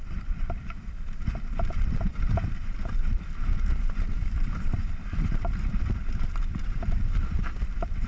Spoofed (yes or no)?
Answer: yes